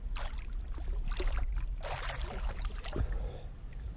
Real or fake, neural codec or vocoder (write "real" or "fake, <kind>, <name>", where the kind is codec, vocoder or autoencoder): real